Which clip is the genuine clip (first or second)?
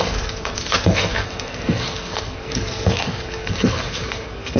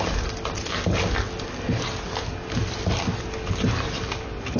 second